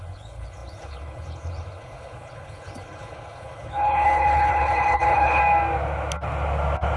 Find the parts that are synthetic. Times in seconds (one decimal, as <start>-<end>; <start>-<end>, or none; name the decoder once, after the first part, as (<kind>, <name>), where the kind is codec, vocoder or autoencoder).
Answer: 0.0-5.4 (codec, HILCodec)